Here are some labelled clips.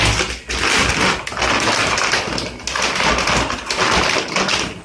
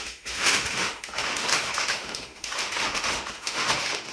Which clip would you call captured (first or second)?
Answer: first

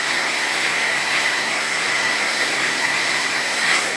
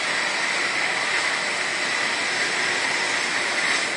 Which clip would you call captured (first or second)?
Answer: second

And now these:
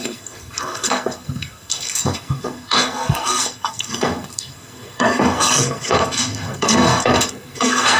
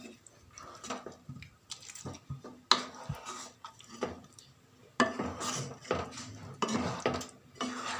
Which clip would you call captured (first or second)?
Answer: second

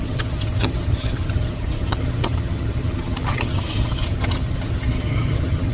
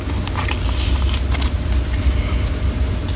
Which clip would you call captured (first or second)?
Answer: second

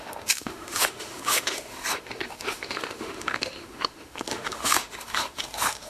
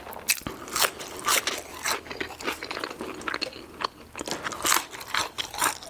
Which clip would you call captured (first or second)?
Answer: second